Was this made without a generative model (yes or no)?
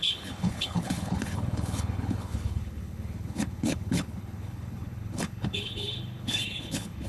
no